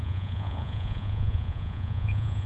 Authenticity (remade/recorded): remade